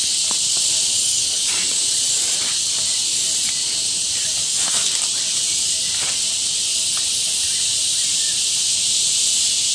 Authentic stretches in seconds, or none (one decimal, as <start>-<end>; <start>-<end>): 0.0-1.0; 1.8-4.4; 4.9-9.7